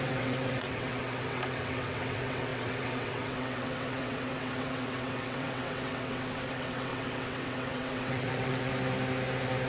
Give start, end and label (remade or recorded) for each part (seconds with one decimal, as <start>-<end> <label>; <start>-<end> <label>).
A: 0.0-8.7 remade; 8.7-9.7 recorded